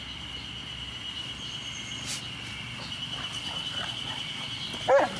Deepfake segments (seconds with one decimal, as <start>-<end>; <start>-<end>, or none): none

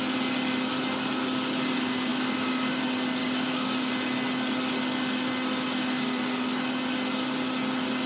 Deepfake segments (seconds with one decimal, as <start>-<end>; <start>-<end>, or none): 2.1-2.8; 3.2-3.9

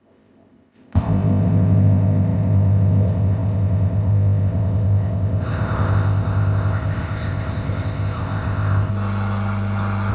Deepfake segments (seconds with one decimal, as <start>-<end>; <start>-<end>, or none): 0.0-8.9

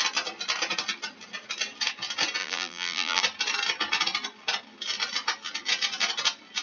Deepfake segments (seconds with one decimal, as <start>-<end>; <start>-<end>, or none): 2.4-3.2

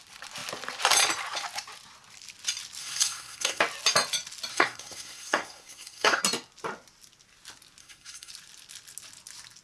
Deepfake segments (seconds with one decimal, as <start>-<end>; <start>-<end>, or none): 2.8-3.6; 4.5-6.2; 7.8-8.3

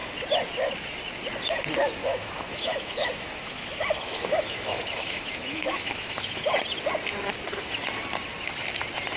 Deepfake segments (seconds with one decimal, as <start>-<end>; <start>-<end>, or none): 2.0-6.5

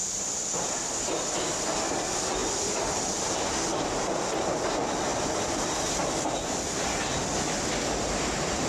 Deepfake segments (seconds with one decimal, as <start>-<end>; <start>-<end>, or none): none